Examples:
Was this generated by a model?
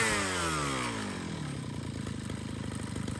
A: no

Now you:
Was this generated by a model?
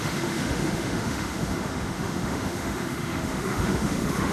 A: yes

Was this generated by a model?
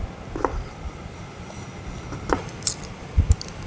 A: no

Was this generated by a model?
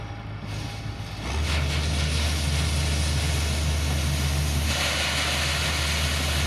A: no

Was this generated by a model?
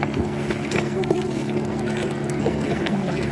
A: yes